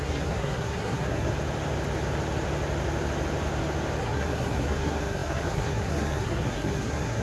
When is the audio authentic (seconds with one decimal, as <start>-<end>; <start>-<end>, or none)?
1.3-4.0